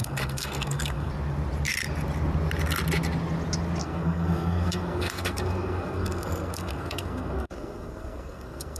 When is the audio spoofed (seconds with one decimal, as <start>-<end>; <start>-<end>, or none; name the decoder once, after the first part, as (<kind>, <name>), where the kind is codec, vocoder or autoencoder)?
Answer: 0.0-1.1 (codec, SNAC); 3.8-8.8